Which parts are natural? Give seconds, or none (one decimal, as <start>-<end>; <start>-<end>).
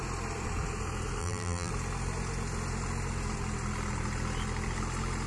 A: 0.0-1.2; 1.7-5.3